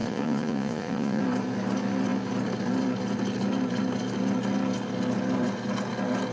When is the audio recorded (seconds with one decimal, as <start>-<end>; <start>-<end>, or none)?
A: 1.2-6.3